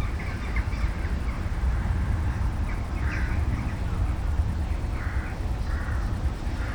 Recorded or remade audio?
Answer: remade